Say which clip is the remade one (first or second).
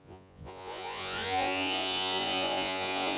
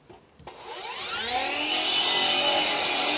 first